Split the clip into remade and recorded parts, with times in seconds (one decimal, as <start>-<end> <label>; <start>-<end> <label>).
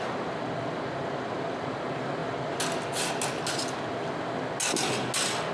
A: 0.0-5.5 recorded